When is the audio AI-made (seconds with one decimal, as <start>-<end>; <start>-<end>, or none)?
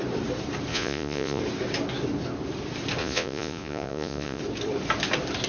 0.7-1.4; 3.0-4.4